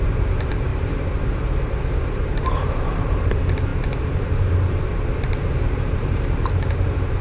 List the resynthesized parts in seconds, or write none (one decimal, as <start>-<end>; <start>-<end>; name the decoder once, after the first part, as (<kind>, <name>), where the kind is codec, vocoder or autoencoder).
0.0-7.2 (vocoder, BigVGAN v2)